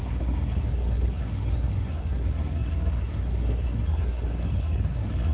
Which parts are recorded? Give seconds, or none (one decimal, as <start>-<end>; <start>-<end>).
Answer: none